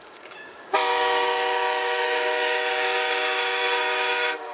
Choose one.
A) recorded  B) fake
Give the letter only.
B